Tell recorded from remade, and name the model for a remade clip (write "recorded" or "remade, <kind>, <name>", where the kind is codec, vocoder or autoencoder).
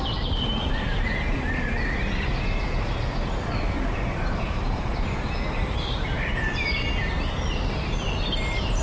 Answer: recorded